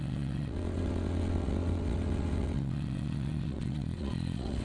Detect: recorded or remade remade